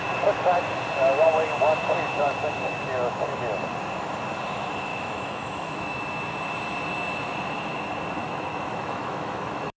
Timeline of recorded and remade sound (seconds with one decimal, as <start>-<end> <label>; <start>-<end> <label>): 0.0-4.9 recorded; 4.9-6.0 remade; 6.0-8.2 recorded; 8.2-9.8 remade